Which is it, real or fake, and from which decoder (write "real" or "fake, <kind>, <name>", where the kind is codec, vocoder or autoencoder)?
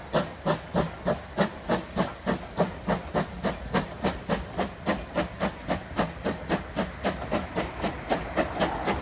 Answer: real